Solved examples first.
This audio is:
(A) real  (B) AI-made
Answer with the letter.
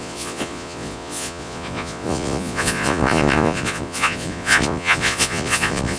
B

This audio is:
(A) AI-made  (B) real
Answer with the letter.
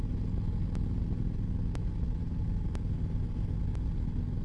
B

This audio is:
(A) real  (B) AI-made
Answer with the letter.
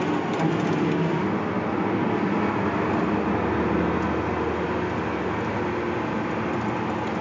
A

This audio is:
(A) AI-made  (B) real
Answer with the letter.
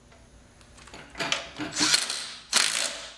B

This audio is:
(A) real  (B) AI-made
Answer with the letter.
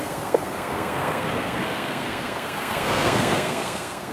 B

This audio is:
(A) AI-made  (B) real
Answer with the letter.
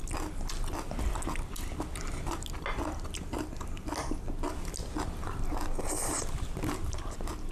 B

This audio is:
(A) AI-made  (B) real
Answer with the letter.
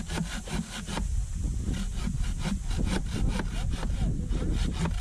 B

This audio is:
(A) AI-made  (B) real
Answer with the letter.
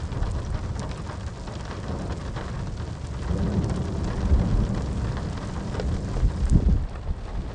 B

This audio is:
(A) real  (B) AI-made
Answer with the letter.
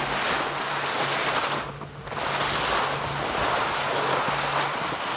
A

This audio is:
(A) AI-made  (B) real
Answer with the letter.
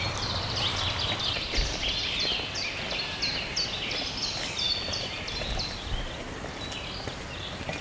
B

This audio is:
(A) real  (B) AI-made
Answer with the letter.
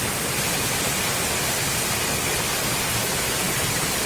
A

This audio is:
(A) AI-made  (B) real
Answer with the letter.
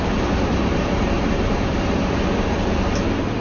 A